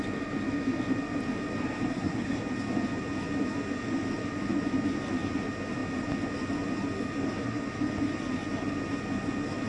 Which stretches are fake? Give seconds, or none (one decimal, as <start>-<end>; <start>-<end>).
1.9-2.4